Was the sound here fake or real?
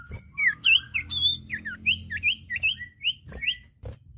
real